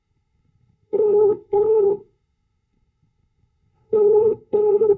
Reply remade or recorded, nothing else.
remade